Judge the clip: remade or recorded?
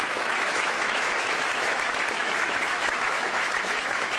remade